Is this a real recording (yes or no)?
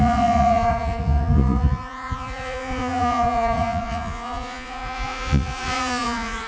no